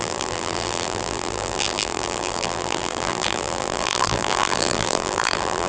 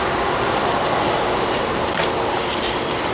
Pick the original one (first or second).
second